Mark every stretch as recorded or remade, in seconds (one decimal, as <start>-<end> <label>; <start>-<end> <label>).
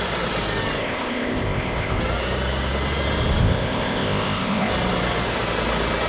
0.0-0.8 recorded; 0.8-2.0 remade; 2.0-3.4 recorded; 3.4-4.7 remade; 4.7-6.1 recorded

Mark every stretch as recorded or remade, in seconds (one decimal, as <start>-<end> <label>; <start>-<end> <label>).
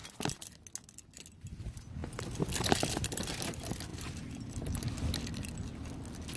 0.0-6.4 recorded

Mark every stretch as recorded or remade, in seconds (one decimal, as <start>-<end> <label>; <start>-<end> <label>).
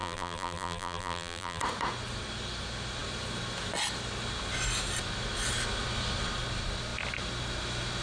0.0-1.6 remade; 1.6-8.0 recorded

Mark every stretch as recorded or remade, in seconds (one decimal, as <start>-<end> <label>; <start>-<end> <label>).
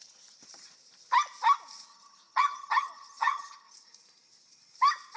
0.0-1.9 recorded; 1.9-3.7 remade; 3.7-5.2 recorded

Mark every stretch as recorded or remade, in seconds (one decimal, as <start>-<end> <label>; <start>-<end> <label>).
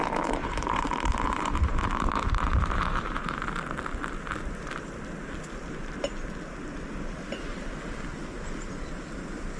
0.0-0.4 recorded; 0.4-3.4 remade; 3.4-9.6 recorded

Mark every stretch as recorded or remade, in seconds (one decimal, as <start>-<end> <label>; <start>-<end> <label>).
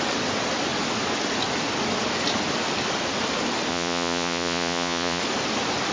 0.0-3.7 recorded; 3.7-5.2 remade; 5.2-5.9 recorded